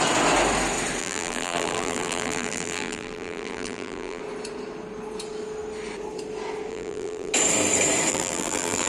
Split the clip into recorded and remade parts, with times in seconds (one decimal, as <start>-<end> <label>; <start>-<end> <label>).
0.0-1.0 recorded; 1.0-4.2 remade; 4.2-6.7 recorded; 6.7-7.3 remade; 7.3-8.1 recorded; 8.1-8.9 remade